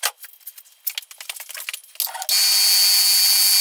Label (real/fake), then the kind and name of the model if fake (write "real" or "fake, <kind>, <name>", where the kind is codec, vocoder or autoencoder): real